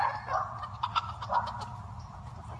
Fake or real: real